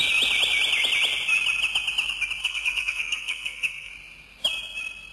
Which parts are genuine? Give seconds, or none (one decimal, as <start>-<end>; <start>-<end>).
0.0-2.4; 3.9-5.1

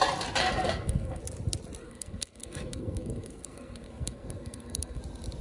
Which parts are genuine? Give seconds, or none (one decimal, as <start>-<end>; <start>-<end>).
0.0-0.4; 1.2-1.8; 5.0-5.4